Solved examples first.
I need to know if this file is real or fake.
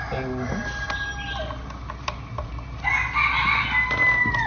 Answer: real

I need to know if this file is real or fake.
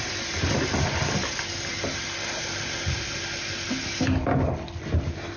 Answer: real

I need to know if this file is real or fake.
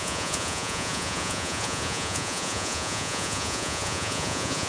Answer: fake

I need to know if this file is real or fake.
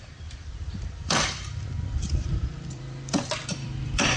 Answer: fake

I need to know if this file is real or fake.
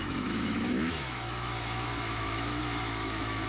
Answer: fake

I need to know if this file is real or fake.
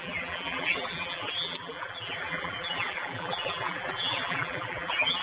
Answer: fake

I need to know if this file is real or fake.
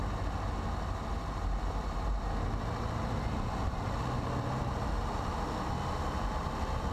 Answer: real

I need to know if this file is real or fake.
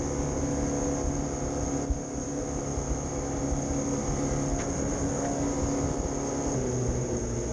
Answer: real